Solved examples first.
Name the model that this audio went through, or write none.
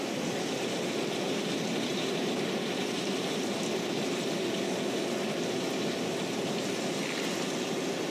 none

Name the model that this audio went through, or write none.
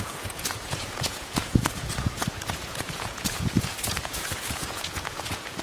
vocoder, Vocos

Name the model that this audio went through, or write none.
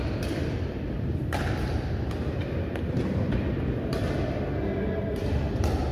none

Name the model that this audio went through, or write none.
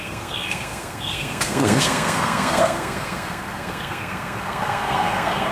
codec, SNAC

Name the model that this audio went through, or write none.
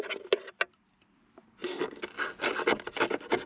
none